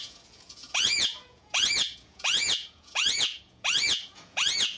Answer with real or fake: fake